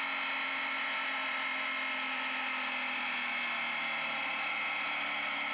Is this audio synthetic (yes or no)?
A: no